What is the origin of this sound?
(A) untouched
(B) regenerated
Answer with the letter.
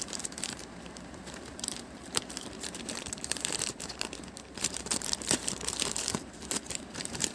B